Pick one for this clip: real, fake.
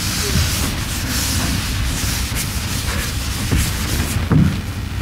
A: real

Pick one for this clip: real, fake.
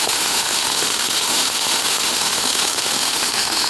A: fake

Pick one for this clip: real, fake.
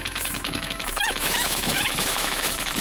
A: fake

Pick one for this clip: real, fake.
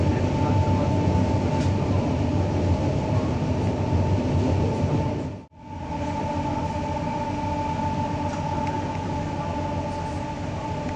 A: real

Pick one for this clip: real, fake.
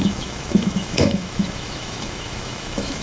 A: fake